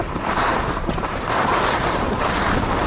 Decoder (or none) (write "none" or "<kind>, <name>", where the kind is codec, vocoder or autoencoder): vocoder, BigVGAN v2